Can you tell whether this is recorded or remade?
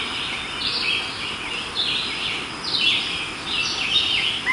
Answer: recorded